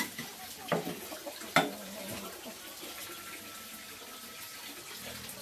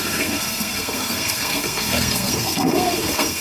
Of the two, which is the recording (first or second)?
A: first